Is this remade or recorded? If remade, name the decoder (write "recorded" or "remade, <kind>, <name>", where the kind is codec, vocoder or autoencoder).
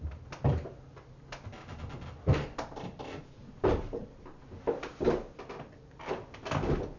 recorded